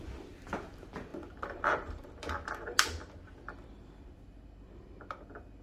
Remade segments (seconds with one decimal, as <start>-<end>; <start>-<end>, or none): 1.1-2.1